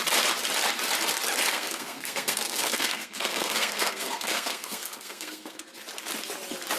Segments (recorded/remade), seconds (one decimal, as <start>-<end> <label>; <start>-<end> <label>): 0.0-1.5 recorded; 1.5-5.6 remade; 5.6-6.8 recorded